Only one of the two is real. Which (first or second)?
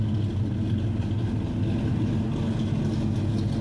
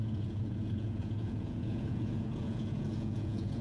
first